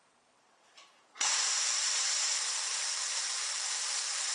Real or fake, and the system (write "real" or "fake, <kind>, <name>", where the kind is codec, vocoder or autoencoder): fake, vocoder, BigVGAN v2